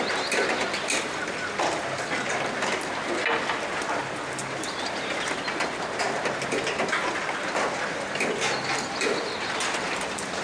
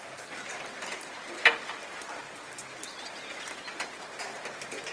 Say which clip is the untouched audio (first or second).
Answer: first